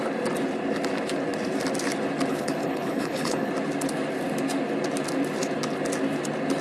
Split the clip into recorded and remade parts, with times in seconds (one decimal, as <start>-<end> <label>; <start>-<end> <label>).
0.0-2.3 recorded; 2.3-3.5 remade; 3.5-6.6 recorded